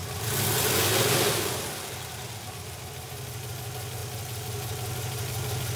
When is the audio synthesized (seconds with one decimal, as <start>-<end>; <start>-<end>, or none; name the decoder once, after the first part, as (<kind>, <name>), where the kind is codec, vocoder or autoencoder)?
none